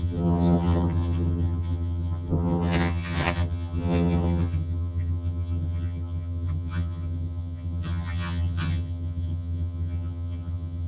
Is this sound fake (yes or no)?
yes